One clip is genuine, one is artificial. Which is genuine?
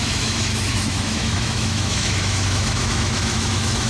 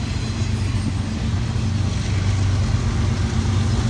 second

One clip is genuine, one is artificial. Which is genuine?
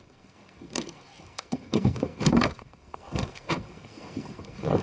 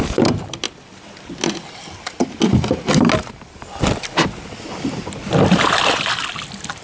second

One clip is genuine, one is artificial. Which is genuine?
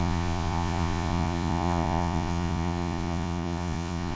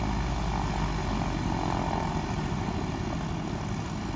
second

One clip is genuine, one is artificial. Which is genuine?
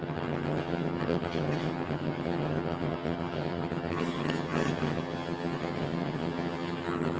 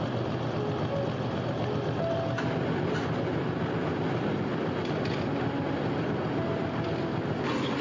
second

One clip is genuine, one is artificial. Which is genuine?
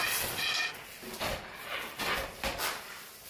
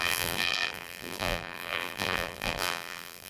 first